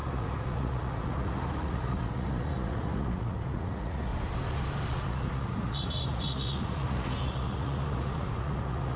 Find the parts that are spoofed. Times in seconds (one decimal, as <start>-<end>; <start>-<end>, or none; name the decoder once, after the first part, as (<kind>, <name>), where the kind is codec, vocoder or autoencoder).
0.0-4.1 (vocoder, Vocos); 4.9-9.0